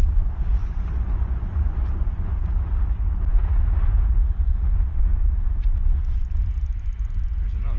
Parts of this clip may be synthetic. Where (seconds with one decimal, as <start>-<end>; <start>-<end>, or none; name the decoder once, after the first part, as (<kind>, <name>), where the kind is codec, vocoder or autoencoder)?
0.6-2.3 (vocoder, Vocos)